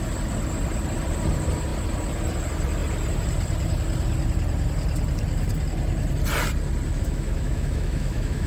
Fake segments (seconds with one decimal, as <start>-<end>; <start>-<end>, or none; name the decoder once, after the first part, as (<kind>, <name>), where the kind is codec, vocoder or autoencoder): 6.9-8.5 (autoencoder, DAC-VAE)